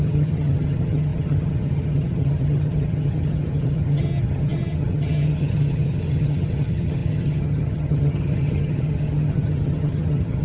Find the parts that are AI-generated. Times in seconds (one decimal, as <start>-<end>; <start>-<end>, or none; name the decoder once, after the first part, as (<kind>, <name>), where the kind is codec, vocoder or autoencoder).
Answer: 0.0-10.4 (vocoder, HiFi-GAN)